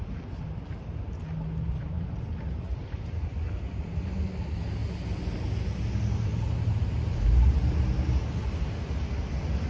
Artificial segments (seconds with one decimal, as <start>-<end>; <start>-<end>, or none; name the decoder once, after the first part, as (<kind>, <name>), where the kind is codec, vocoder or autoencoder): none

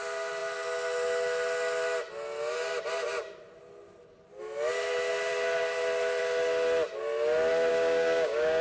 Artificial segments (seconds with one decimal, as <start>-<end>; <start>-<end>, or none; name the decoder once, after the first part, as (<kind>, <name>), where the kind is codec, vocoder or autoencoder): 7.7-8.6 (codec, DAC)